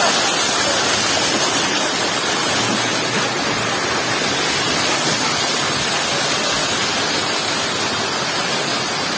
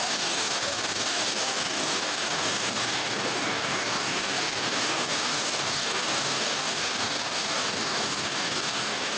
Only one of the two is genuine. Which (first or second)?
first